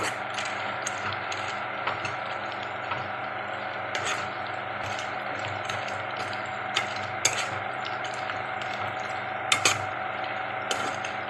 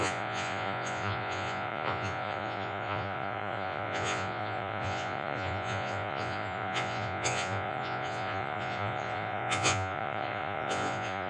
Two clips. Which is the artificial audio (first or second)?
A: second